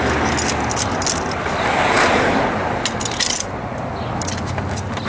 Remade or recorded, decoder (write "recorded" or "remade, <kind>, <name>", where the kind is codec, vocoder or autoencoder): recorded